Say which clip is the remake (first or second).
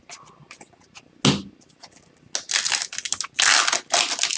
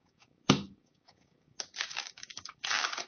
second